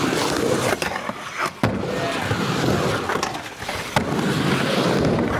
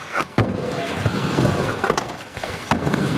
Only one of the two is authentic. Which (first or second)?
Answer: first